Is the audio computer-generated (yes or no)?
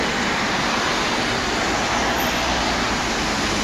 no